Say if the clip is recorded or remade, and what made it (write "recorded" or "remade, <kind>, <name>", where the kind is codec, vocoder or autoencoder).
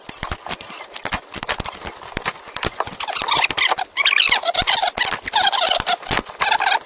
recorded